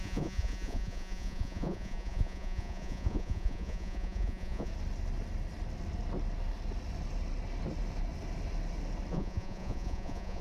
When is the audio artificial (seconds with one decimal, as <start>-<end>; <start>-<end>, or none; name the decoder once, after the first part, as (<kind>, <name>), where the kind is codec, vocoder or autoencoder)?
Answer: 0.0-4.7 (vocoder, Vocos); 9.1-10.4